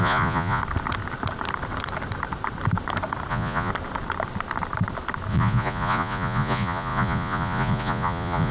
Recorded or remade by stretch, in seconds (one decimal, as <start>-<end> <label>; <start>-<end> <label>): 0.0-0.6 remade; 0.6-3.3 recorded; 3.3-3.7 remade; 3.7-5.3 recorded; 5.3-8.5 remade